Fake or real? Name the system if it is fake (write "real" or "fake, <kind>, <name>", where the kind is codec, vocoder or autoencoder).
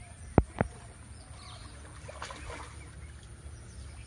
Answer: real